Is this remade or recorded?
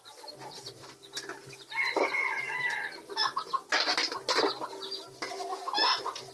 recorded